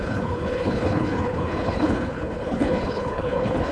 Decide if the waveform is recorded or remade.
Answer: remade